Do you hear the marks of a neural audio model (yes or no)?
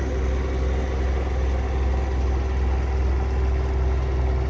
no